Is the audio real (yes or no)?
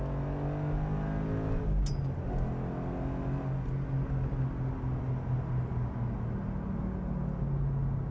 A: yes